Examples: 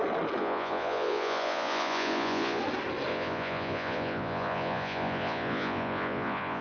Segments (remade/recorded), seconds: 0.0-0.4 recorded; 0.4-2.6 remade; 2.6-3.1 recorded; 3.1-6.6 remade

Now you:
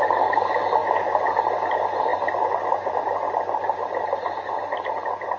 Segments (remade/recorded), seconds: 0.0-5.4 recorded

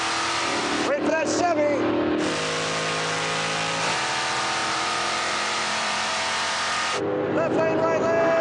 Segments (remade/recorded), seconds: 0.0-0.6 recorded; 0.6-1.4 remade; 1.4-4.6 recorded; 4.6-6.1 remade; 6.1-8.4 recorded

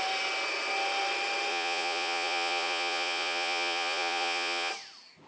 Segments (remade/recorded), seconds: 0.0-1.5 recorded; 1.5-4.7 remade; 4.7-5.3 recorded

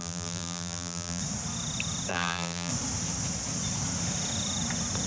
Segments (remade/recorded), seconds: 0.0-1.2 remade; 1.2-2.1 recorded; 2.1-2.7 remade; 2.7-5.1 recorded